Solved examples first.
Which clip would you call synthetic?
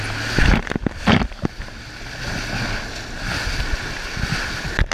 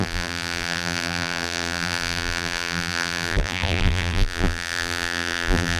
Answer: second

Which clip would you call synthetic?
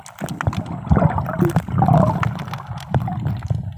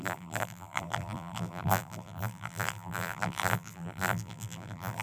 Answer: second